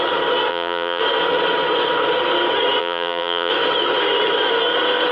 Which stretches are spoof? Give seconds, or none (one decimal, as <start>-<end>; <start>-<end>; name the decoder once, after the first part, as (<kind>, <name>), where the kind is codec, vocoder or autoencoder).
0.5-1.0 (vocoder, BigVGAN v2); 2.8-3.5